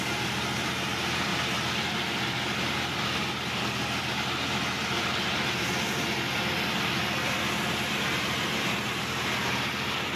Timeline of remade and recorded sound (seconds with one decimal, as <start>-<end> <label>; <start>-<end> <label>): 0.0-10.2 recorded